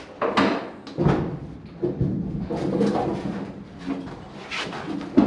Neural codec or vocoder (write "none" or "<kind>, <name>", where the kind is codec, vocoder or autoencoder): none